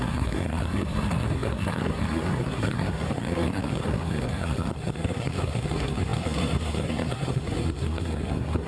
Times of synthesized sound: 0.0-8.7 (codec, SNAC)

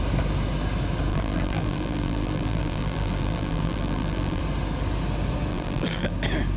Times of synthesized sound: 1.1-4.4 (vocoder, BigVGAN v2); 5.5-6.1

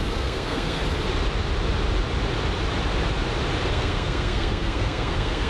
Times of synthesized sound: 0.0-0.8 (codec, SNAC); 3.7-5.5

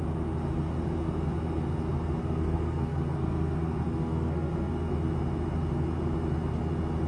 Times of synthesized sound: 2.2-4.9 (codec, SNAC)

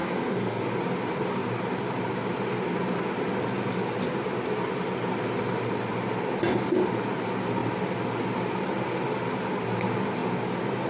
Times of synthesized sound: 0.0-0.6 (codec, SNAC)

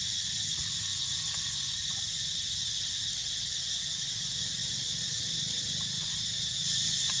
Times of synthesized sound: 4.6-5.7 (vocoder, BigVGAN v2)

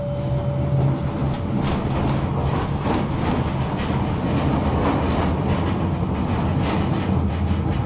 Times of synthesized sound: none

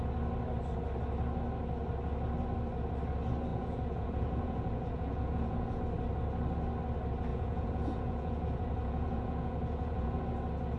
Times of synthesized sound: 3.5-5.8 (vocoder, Vocos); 7.3-10.2